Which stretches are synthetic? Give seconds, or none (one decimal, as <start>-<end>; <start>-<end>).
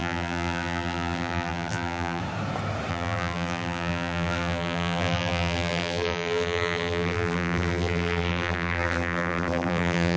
0.0-2.2; 2.9-10.2